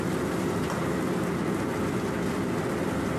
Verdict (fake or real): real